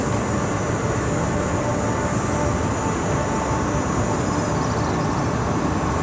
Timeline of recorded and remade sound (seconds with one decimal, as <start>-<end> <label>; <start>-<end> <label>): 0.0-6.0 recorded